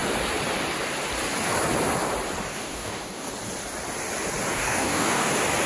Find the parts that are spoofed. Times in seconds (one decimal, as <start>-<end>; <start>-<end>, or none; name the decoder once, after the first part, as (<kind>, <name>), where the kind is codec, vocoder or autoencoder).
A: 2.5-3.3 (codec, DAC); 4.5-5.3